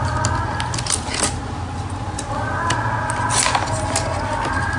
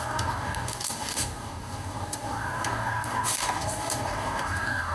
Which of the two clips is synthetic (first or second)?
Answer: second